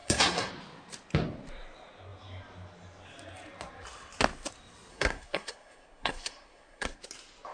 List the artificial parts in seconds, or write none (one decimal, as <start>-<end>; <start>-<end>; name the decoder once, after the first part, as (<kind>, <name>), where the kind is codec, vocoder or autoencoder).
0.0-0.5 (codec, SNAC); 4.9-7.0